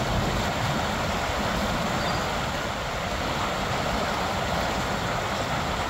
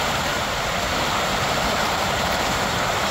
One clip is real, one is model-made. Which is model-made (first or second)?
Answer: second